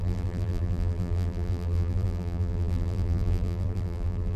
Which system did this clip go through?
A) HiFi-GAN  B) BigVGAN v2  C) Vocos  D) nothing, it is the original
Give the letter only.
B